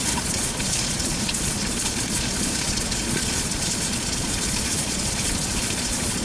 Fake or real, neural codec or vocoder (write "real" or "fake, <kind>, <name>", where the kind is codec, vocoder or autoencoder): fake, vocoder, Vocos